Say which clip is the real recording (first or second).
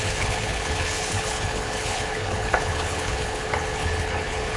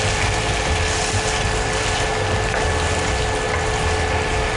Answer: second